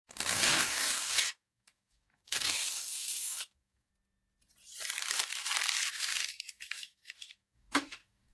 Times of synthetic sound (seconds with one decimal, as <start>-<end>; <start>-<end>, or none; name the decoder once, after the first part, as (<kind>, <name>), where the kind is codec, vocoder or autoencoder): 0.0-3.9 (codec, DAC); 5.9-8.3